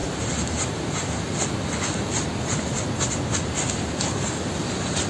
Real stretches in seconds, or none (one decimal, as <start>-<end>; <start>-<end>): 0.0-5.1